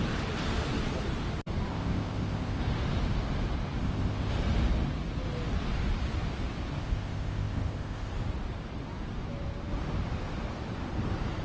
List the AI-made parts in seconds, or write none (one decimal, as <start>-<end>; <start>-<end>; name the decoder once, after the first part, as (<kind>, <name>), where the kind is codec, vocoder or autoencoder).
1.7-2.6 (codec, ZipCodec); 3.8-4.3; 6.8-8.1